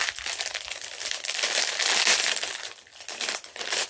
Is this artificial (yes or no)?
no